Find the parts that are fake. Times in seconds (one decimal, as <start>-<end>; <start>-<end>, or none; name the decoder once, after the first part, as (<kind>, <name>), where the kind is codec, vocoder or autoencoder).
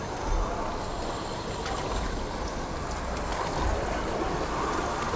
3.3-5.2 (vocoder, BigVGAN v2)